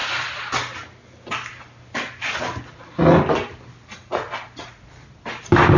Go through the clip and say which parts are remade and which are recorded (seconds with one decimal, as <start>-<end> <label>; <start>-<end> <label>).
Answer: 0.0-5.8 recorded